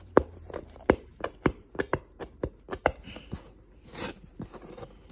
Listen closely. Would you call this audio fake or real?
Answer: fake